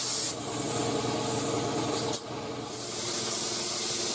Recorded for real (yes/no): yes